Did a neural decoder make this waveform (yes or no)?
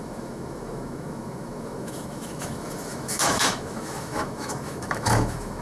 yes